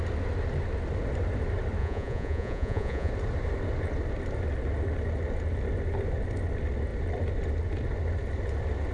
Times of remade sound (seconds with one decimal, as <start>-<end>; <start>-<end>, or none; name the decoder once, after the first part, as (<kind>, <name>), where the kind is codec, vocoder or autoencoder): 1.8-3.1 (vocoder, Vocos)